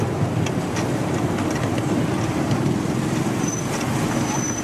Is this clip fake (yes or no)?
no